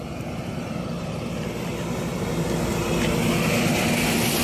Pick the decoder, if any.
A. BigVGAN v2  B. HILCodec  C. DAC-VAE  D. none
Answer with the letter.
D